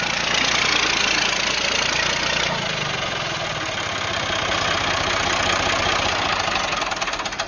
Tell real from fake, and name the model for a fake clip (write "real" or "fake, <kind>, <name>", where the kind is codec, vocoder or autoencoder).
real